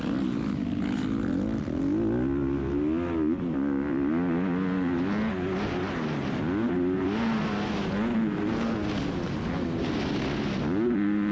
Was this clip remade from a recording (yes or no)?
no